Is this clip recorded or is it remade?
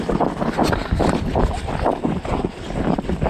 recorded